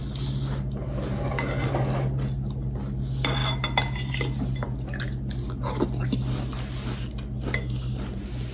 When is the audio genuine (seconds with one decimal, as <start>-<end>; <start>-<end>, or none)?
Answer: 0.0-8.5

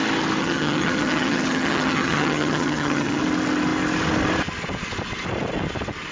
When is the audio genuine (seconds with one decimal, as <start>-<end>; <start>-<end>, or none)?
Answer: 0.0-0.4; 3.2-6.1